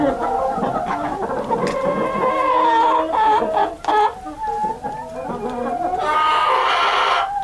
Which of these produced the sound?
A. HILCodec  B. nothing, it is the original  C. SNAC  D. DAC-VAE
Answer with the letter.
B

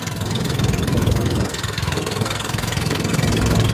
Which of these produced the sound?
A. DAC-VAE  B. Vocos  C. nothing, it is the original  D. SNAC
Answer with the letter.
D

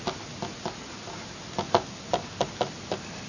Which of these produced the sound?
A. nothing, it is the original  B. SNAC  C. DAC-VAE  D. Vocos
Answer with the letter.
A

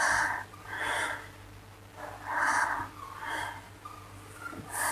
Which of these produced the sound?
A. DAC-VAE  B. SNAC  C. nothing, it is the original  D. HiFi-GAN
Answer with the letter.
C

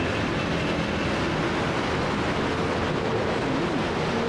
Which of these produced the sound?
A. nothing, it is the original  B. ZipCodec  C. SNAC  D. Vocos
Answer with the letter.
A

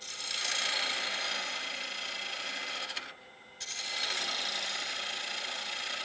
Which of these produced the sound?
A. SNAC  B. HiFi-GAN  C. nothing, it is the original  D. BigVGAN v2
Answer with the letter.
C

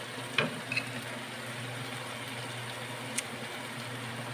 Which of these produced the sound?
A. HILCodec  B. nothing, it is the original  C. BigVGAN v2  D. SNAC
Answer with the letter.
B